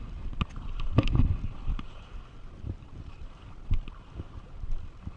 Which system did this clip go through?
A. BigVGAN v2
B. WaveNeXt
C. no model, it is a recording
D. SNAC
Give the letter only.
C